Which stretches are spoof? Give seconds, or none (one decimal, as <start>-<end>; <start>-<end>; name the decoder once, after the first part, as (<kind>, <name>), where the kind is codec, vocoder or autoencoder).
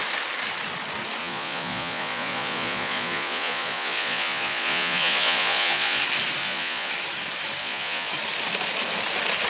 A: 1.2-6.0 (vocoder, Vocos); 6.4-6.9; 7.6-8.1